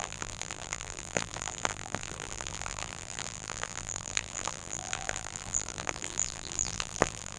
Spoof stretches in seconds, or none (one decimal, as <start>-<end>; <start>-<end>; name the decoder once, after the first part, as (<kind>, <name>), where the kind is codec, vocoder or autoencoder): 0.0-7.4 (vocoder, BigVGAN v2)